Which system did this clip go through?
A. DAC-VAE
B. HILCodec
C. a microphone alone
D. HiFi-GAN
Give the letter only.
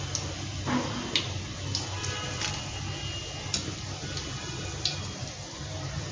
C